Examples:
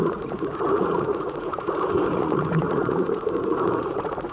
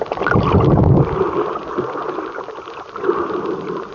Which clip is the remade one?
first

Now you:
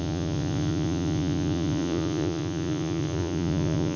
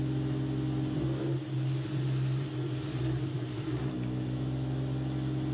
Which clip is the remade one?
first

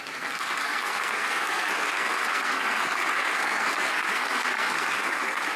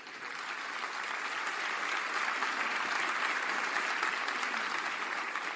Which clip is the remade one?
first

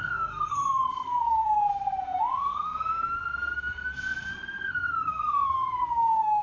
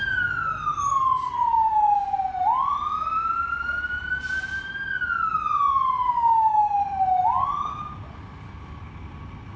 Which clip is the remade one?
first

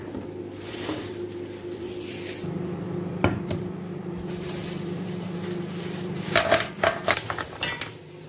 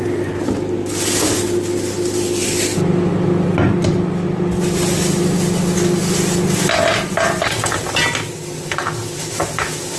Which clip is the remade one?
first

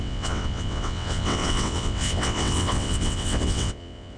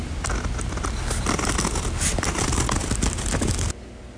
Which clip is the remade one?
first